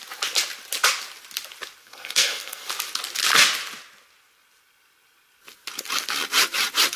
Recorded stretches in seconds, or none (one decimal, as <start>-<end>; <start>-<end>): 0.0-1.8; 2.7-7.0